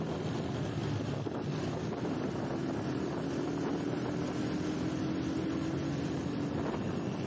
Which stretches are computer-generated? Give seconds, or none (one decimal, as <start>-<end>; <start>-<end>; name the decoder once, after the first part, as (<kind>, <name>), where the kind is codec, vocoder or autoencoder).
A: none